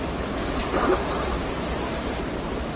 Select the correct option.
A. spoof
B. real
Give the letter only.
B